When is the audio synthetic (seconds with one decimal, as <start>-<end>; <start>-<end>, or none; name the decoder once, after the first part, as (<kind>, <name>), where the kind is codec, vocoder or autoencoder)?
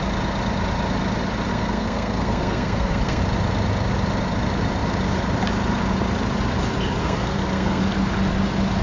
1.5-3.2 (codec, SNAC); 7.0-7.8